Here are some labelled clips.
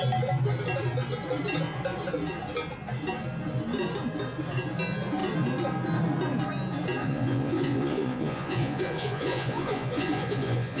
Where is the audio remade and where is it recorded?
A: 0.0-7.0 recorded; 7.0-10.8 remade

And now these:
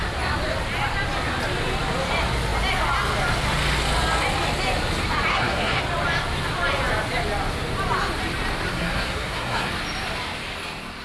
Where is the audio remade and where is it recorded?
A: 0.0-5.3 recorded; 5.3-5.8 remade; 5.8-8.7 recorded; 8.7-9.7 remade; 9.7-11.0 recorded

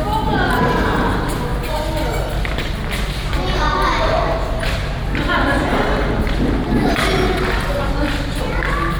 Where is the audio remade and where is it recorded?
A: 0.0-9.0 recorded

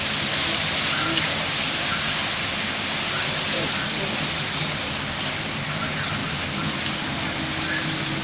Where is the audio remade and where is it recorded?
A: 0.0-8.2 recorded